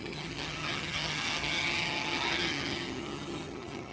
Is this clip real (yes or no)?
no